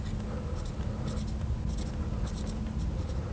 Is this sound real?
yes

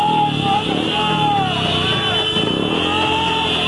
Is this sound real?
yes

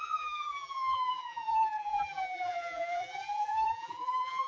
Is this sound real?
no